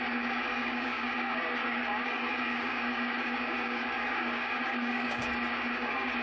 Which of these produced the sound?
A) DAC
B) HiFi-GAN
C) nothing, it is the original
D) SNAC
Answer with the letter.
A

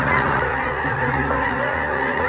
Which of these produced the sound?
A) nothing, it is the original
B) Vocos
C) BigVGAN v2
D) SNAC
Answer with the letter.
B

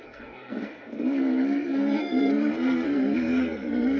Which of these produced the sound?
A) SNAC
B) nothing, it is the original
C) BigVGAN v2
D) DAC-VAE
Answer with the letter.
A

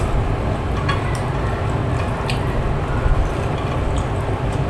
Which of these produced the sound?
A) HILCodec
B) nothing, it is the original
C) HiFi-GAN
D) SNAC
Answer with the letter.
B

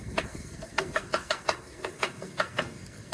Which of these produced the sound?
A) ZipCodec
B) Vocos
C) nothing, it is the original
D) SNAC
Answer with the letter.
D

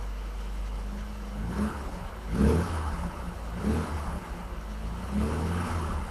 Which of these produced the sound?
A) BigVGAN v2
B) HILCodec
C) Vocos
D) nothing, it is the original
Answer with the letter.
B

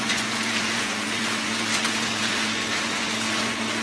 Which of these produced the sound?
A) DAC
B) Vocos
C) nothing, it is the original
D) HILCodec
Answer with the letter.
B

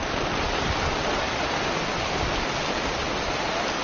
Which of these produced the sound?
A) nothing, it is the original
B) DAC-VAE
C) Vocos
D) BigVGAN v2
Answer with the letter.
A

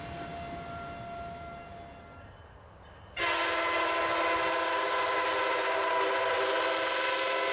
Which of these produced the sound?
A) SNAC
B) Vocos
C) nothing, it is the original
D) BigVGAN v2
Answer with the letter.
C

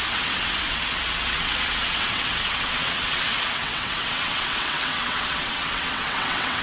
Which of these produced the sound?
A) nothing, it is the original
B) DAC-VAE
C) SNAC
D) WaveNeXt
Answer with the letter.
D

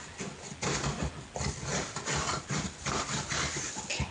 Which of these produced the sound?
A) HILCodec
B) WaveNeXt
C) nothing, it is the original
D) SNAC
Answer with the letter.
C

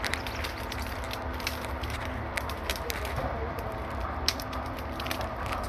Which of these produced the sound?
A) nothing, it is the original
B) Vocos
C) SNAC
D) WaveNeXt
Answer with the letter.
A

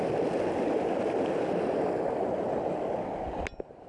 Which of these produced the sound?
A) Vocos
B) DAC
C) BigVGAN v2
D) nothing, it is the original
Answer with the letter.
D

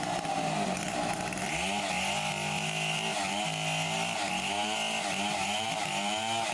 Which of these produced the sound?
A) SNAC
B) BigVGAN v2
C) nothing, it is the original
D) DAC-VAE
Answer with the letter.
C